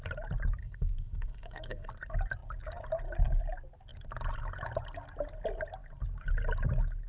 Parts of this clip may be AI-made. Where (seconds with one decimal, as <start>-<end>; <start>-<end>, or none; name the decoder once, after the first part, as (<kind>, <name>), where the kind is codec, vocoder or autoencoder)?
0.6-1.9 (codec, SNAC)